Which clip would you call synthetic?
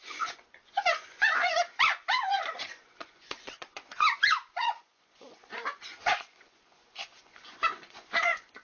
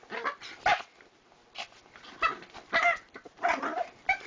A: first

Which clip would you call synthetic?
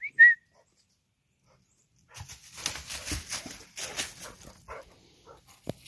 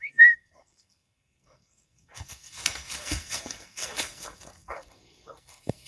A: second